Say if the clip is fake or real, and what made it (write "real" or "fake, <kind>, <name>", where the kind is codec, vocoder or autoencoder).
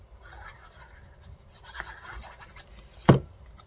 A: fake, vocoder, BigVGAN v2